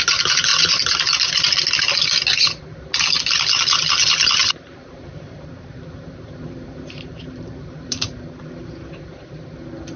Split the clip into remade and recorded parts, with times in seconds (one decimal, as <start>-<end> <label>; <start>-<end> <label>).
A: 0.0-4.4 recorded; 4.4-8.4 remade; 8.4-10.0 recorded

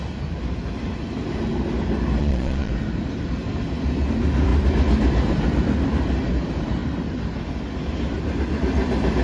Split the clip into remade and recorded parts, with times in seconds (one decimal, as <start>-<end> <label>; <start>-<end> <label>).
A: 0.0-2.2 recorded; 2.2-2.7 remade; 2.7-9.2 recorded

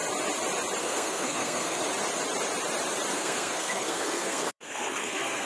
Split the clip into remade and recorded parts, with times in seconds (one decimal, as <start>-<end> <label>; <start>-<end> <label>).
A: 0.0-0.8 recorded; 0.8-1.8 remade; 1.8-3.1 recorded; 3.1-5.5 remade

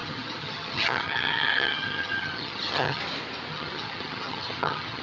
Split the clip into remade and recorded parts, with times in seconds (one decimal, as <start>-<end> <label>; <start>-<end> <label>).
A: 0.0-3.0 remade; 3.0-3.5 recorded; 3.5-5.0 remade

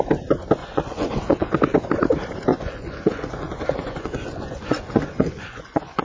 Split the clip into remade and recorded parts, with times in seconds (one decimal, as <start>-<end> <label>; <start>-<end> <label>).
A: 0.0-0.6 recorded; 0.6-1.6 remade; 1.6-2.5 recorded; 2.5-6.0 remade

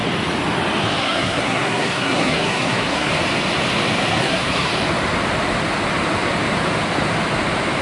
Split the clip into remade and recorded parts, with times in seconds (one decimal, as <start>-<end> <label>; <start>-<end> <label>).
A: 0.0-1.0 recorded; 1.0-3.1 remade; 3.1-4.2 recorded; 4.2-4.7 remade; 4.7-7.8 recorded

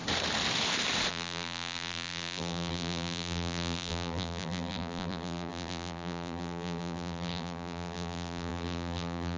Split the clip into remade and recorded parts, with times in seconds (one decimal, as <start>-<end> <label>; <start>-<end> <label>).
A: 0.0-1.1 recorded; 1.1-9.4 remade